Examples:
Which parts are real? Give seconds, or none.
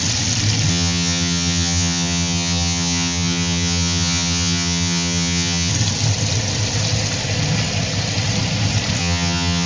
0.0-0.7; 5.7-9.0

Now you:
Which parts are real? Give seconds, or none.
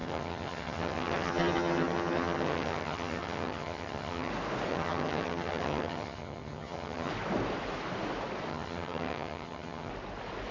4.3-4.7; 7.1-8.5; 9.9-10.5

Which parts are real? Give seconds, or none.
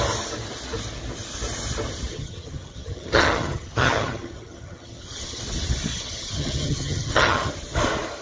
0.0-2.1; 5.4-5.9; 7.5-8.2